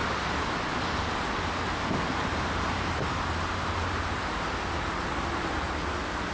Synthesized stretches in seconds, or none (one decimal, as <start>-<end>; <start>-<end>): 2.3-4.2